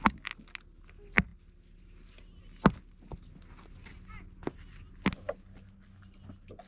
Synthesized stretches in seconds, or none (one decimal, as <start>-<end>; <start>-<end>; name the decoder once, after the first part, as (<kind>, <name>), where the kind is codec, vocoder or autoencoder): none